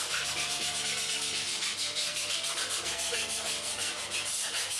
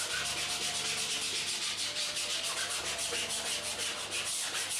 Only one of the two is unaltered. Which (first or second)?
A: second